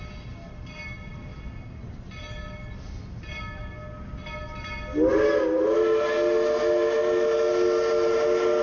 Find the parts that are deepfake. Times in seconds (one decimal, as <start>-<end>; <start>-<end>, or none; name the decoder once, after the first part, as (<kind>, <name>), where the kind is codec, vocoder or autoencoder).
none